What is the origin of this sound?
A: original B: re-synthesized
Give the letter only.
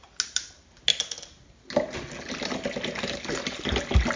A